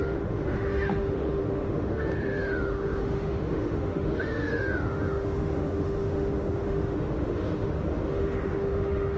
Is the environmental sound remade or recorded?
remade